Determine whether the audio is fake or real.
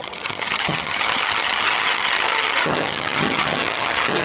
fake